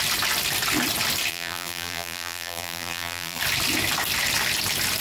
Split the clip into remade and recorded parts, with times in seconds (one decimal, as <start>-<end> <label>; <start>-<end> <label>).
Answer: 0.0-1.3 recorded; 1.3-3.4 remade; 3.4-5.0 recorded